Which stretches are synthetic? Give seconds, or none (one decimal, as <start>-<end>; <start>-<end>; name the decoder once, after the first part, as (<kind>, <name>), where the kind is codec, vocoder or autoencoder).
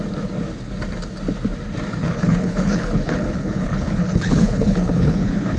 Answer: 2.0-5.6 (codec, HILCodec)